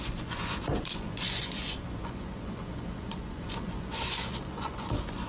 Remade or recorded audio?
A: remade